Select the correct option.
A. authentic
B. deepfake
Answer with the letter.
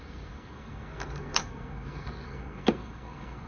B